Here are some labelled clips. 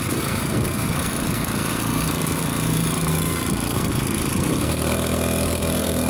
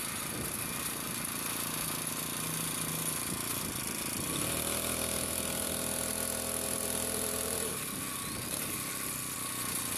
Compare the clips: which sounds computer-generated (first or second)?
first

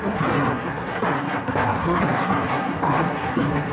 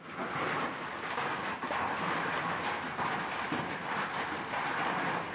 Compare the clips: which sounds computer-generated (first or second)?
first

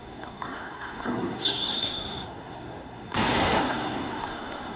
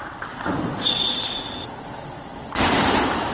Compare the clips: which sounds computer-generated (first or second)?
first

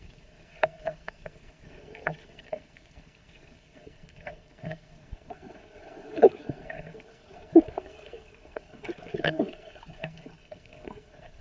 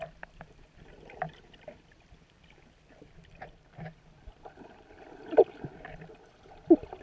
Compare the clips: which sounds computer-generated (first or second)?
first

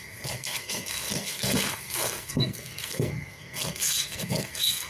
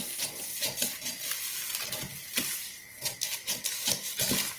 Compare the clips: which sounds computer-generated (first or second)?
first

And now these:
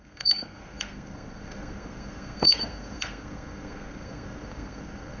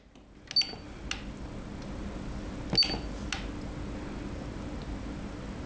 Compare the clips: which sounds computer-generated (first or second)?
first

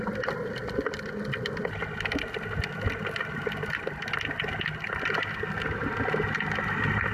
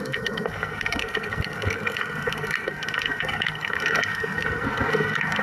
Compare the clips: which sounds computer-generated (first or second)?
second